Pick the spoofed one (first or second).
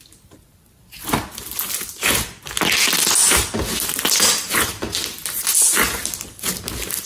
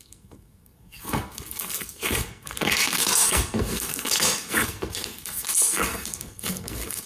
second